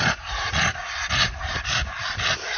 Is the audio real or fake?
real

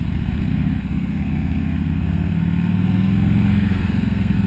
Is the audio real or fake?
fake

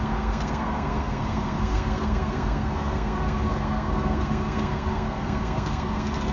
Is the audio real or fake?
fake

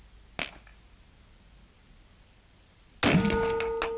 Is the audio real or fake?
real